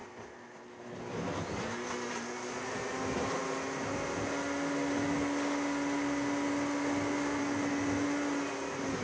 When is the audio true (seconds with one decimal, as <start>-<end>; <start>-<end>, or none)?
0.0-9.0